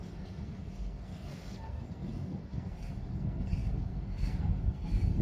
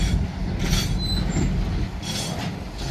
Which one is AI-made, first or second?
first